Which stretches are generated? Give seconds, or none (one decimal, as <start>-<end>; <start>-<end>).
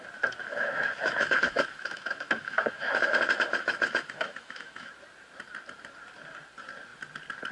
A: 0.4-4.9